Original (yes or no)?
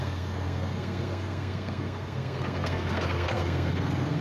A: no